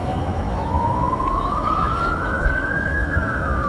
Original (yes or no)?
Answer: no